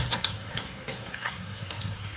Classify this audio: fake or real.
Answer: fake